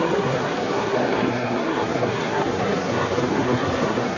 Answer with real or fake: fake